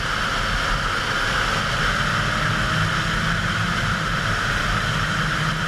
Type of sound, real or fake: real